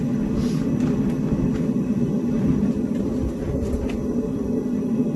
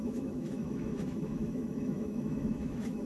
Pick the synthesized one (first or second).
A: second